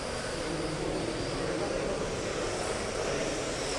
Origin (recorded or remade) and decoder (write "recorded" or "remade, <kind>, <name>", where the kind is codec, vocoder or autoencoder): recorded